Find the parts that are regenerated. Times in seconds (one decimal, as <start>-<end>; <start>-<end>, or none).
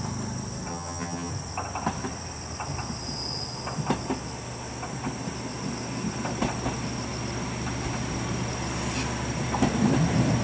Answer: 0.7-1.3